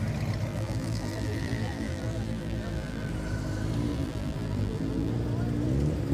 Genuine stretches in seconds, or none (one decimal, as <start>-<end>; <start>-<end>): 0.0-0.5; 3.1-3.9; 5.1-6.1